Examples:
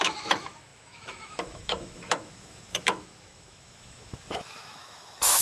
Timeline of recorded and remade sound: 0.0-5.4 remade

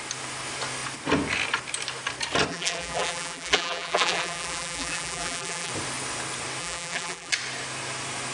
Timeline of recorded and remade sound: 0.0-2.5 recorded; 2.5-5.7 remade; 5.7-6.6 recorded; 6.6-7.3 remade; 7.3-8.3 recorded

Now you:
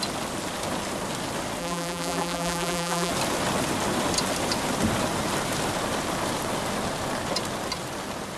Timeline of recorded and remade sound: 0.0-1.6 recorded; 1.6-3.1 remade; 3.1-8.4 recorded

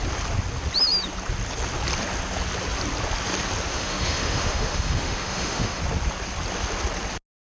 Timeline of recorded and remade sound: 0.0-3.7 recorded; 3.7-5.8 remade; 5.8-7.4 recorded

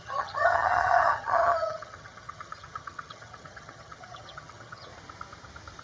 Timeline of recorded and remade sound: 0.0-4.9 remade; 4.9-5.8 recorded

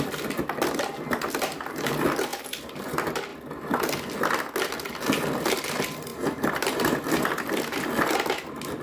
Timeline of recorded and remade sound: 0.0-2.3 recorded; 2.3-2.8 remade; 2.8-6.1 recorded; 6.1-6.8 remade; 6.8-8.8 recorded